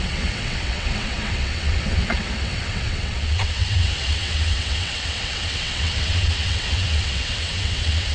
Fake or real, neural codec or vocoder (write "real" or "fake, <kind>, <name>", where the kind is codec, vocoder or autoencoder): fake, vocoder, WaveNeXt